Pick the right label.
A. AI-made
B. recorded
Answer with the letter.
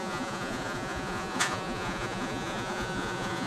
A